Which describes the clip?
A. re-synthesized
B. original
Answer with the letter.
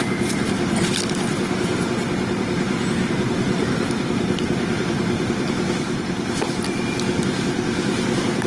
A